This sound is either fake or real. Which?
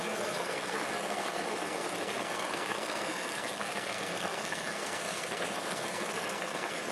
fake